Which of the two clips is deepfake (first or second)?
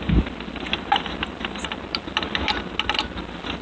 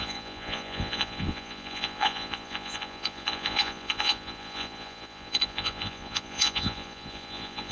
second